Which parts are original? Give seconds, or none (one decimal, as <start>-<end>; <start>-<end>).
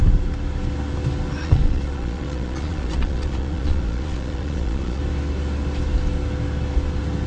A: 0.0-1.4; 5.0-7.3